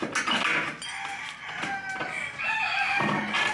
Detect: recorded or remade recorded